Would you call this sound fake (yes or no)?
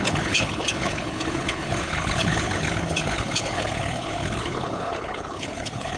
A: yes